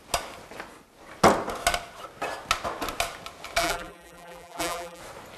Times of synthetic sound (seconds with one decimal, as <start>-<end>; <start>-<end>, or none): 3.6-5.0